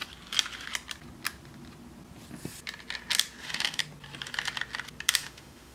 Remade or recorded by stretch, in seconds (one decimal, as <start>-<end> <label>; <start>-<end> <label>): 0.0-3.4 recorded; 3.4-3.8 remade; 3.8-5.1 recorded; 5.1-5.7 remade